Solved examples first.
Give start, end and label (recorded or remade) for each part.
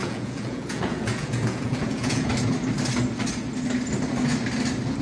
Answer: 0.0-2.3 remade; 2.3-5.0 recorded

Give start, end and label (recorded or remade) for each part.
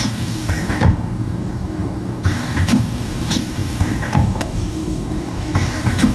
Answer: 0.0-6.1 remade